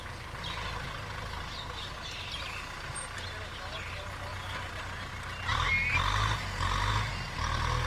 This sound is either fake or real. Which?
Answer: real